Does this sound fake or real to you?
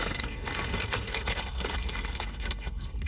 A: fake